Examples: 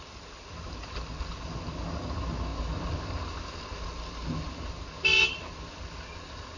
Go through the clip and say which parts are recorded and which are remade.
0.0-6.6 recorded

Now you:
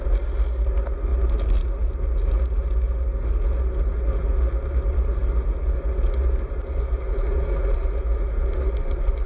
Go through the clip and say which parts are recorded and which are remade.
0.0-9.3 recorded

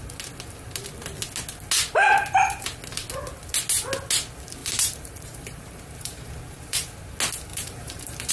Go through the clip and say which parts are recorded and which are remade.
0.0-4.6 recorded; 4.6-6.9 remade; 6.9-7.5 recorded; 7.5-8.3 remade

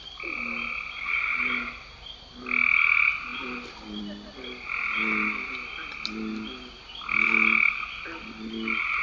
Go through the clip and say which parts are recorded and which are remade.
0.0-9.0 recorded

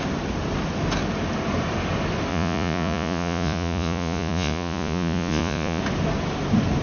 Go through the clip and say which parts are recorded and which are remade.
0.0-2.3 recorded; 2.3-5.8 remade; 5.8-6.8 recorded

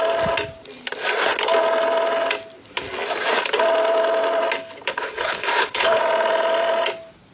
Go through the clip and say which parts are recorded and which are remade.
0.0-4.9 recorded; 4.9-6.0 remade; 6.0-7.3 recorded

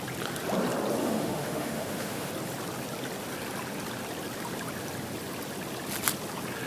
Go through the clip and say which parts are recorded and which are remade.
0.0-1.0 recorded; 1.0-2.3 remade; 2.3-6.7 recorded